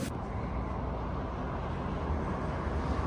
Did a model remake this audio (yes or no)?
no